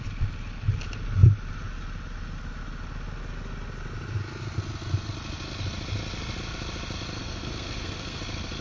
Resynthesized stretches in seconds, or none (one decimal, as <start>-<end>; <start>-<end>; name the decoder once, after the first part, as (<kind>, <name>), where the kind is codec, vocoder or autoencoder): 7.2-8.2 (codec, SNAC)